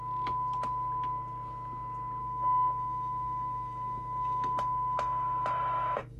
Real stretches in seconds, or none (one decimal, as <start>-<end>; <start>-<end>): 0.0-2.2